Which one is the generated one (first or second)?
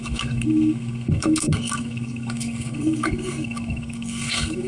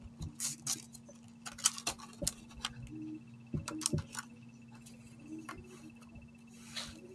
first